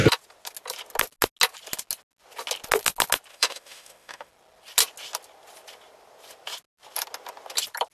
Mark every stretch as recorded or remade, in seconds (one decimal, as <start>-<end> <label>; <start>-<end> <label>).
0.0-3.3 recorded; 3.3-4.3 remade; 4.3-7.9 recorded